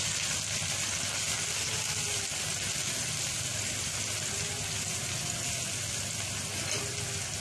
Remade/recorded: recorded